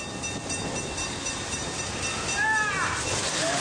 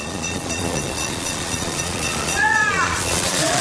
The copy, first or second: second